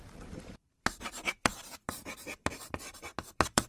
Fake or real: fake